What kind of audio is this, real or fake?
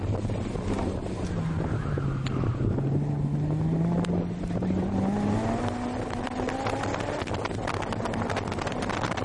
real